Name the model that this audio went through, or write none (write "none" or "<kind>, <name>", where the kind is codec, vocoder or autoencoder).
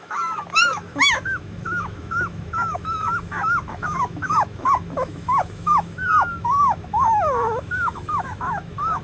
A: autoencoder, DAC-VAE